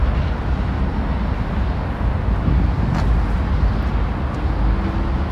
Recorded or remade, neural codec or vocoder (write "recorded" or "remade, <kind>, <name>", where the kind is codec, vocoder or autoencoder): recorded